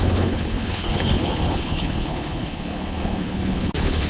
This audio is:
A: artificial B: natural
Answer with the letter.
A